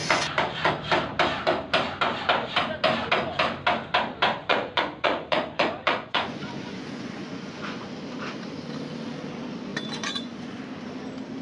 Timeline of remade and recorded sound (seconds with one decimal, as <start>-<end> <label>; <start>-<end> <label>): 0.0-0.7 remade; 0.7-4.4 recorded; 4.4-7.9 remade; 7.9-9.7 recorded; 9.7-10.6 remade; 10.6-11.4 recorded